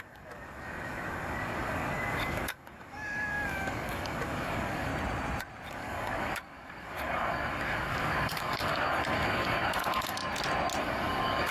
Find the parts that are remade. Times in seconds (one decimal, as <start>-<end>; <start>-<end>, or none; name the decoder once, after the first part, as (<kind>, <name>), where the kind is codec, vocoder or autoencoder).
0.0-4.9 (codec, DAC); 5.7-10.2; 10.8-11.5